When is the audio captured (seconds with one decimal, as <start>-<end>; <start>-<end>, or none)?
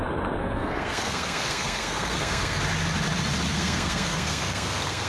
0.0-0.4; 2.6-3.5